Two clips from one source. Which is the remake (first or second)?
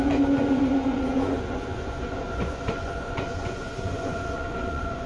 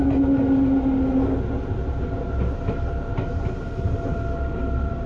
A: first